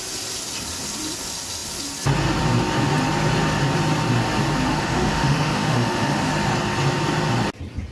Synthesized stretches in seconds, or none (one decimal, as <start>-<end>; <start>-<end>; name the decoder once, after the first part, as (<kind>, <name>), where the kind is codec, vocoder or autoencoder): 4.7-6.3 (autoencoder, DAC-VAE)

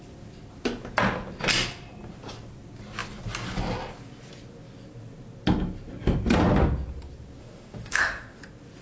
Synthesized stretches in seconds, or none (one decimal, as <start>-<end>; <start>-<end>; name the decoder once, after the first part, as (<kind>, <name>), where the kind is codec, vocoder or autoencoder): 7.4-8.4 (autoencoder, DAC-VAE)

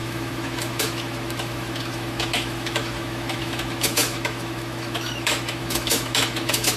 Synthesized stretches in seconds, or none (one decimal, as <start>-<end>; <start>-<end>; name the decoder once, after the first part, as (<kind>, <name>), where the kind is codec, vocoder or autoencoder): 0.0-6.8 (autoencoder, DAC-VAE)

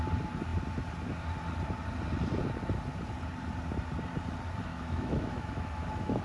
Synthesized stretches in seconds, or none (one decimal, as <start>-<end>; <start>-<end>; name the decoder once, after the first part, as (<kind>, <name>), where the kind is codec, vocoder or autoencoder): 4.7-6.2 (autoencoder, DAC-VAE)